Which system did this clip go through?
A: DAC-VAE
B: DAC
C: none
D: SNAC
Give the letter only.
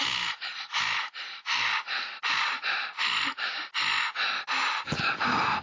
C